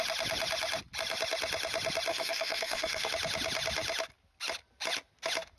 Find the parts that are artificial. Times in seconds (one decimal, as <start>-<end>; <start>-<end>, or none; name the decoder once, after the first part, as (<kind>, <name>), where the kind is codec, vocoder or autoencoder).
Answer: 2.1-3.1 (codec, DAC)